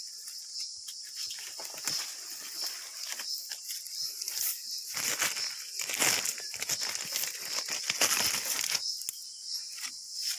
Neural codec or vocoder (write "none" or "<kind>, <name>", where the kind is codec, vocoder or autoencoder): none